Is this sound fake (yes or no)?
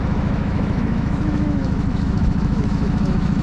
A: yes